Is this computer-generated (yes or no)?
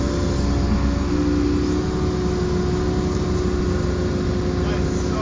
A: no